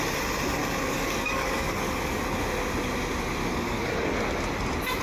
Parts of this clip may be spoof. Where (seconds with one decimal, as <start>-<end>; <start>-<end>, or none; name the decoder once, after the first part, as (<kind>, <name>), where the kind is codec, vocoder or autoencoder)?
0.6-2.2 (codec, DAC); 3.4-4.1

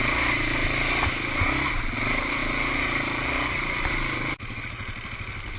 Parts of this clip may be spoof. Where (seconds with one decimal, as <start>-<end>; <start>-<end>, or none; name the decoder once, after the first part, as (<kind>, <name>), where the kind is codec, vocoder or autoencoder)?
2.4-4.4 (vocoder, BigVGAN v2)

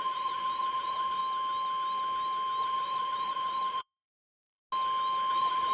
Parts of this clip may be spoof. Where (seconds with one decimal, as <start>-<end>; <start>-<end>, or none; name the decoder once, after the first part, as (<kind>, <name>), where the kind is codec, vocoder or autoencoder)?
0.0-1.2 (vocoder, Vocos); 2.6-4.6; 5.3-5.7

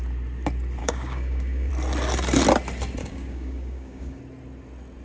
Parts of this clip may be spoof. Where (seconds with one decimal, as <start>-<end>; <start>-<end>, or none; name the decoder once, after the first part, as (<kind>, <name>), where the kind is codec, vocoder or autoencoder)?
0.8-1.7 (codec, DAC); 3.0-4.2

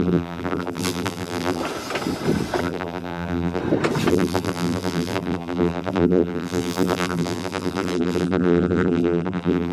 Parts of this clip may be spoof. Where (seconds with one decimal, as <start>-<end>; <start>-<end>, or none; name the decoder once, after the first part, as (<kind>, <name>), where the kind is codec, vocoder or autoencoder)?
0.0-1.6 (vocoder, BigVGAN v2); 2.6-3.6; 4.1-9.7

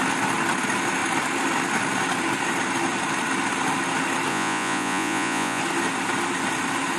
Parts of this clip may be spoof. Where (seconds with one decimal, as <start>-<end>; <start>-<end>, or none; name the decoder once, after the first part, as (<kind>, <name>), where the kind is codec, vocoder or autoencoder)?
4.3-5.6 (vocoder, Vocos)